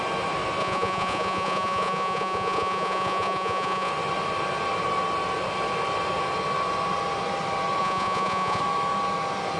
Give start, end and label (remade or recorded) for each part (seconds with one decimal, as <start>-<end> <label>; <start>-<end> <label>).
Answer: 0.0-0.6 recorded; 0.6-3.9 remade; 3.9-7.8 recorded; 7.8-8.6 remade; 8.6-9.6 recorded